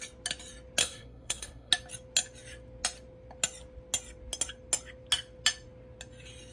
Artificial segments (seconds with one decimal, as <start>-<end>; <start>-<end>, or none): 0.8-1.7